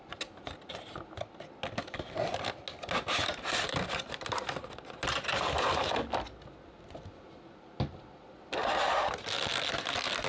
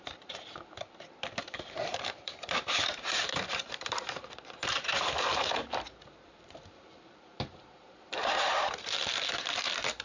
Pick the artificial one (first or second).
second